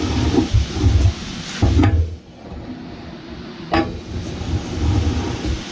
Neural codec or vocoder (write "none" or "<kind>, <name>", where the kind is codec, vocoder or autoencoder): none